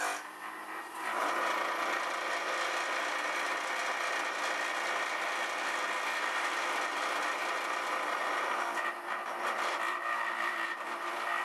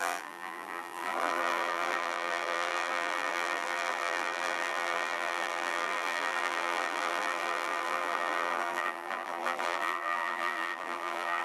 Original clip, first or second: first